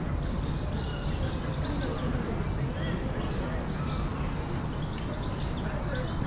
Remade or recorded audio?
recorded